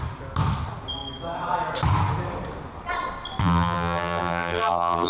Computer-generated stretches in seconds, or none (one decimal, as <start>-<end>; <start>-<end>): 3.4-5.1